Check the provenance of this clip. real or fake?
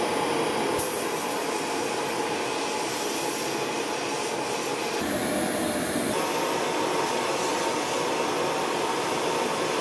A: real